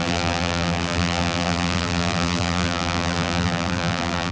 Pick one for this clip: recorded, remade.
remade